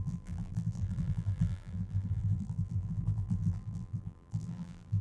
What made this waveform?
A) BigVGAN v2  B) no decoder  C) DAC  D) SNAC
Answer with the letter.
A